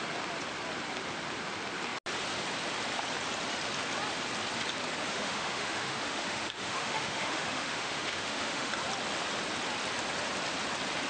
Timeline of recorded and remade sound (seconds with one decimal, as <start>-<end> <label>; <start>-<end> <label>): 0.0-5.1 recorded; 5.1-8.7 remade; 8.7-11.1 recorded